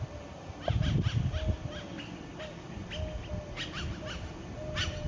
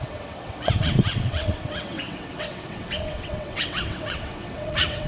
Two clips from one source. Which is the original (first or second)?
first